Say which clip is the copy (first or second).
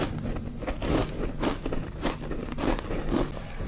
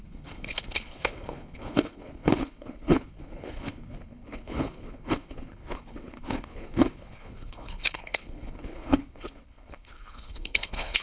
second